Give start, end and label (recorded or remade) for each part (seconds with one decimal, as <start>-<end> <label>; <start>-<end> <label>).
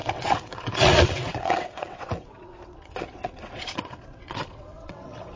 0.0-5.4 remade